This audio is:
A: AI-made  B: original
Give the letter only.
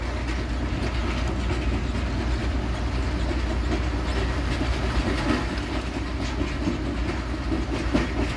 B